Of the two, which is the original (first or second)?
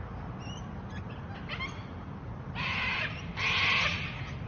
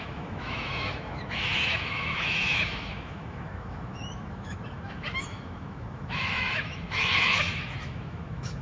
first